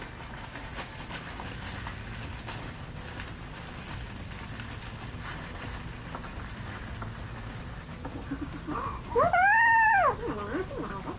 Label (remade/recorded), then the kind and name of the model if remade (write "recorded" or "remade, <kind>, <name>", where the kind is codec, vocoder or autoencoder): recorded